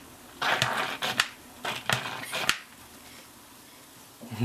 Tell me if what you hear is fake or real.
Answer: fake